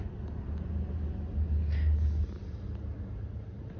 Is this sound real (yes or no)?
yes